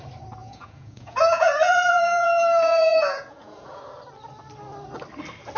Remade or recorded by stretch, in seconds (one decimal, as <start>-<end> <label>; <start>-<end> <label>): 0.0-0.4 recorded; 0.4-3.8 remade; 3.8-5.6 recorded